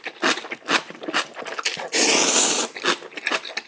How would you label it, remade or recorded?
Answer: recorded